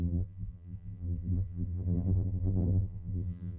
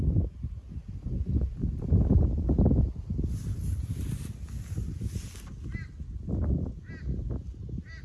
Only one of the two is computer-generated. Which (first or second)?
first